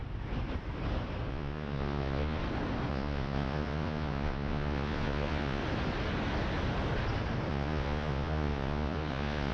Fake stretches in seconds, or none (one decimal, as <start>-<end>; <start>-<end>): 1.3-2.4; 2.9-5.6; 7.5-9.5